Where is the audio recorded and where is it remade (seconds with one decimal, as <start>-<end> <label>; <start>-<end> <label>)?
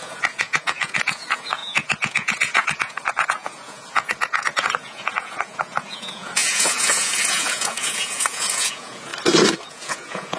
0.0-9.1 remade; 9.1-9.7 recorded; 9.7-10.4 remade